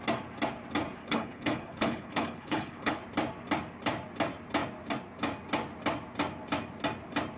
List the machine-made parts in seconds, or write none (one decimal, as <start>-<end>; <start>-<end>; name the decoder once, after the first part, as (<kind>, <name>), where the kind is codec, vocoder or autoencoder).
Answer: 1.0-3.0 (codec, HILCodec)